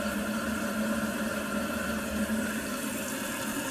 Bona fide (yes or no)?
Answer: yes